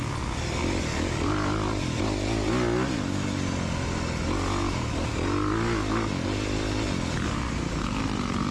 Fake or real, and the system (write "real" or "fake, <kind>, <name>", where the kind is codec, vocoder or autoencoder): real